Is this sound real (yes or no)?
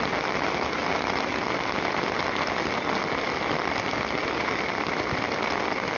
yes